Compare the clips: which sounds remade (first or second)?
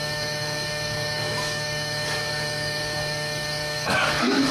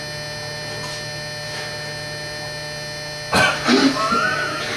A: first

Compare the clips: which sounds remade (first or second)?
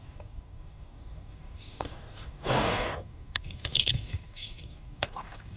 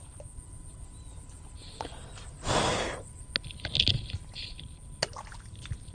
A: first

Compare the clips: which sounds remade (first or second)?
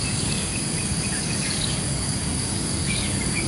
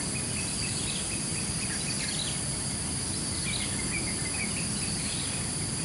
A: first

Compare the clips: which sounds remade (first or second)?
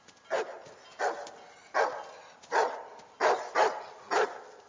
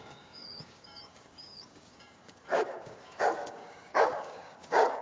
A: second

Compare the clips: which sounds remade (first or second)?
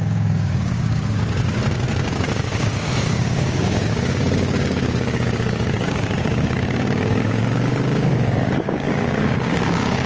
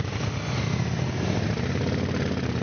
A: first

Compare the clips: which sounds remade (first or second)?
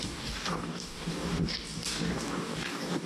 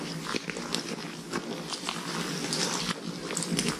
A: first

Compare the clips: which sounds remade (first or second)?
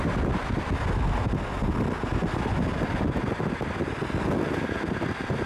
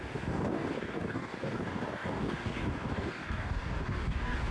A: second